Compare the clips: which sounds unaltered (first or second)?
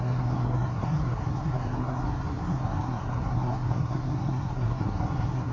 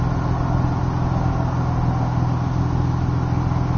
second